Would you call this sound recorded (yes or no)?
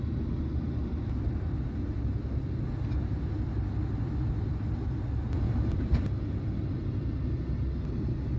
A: yes